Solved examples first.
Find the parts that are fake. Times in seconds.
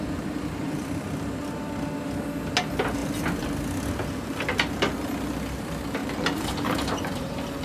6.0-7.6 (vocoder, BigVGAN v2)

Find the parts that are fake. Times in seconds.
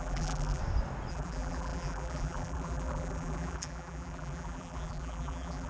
0.0-0.6 (vocoder, BigVGAN v2); 1.1-5.7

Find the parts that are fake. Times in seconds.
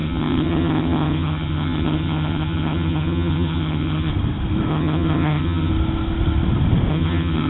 0.0-4.1 (vocoder, HiFi-GAN); 4.7-5.7; 6.9-7.5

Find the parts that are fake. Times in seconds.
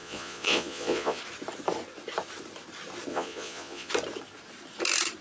0.0-1.2 (vocoder, Vocos); 3.1-3.9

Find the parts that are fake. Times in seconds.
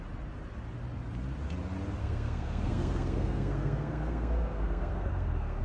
2.0-5.6 (codec, SNAC)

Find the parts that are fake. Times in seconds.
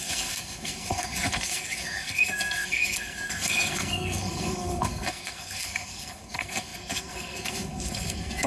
0.0-8.5 (codec, SNAC)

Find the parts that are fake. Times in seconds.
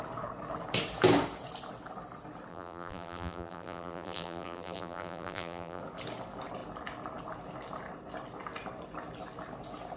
2.5-5.8 (vocoder, BigVGAN v2)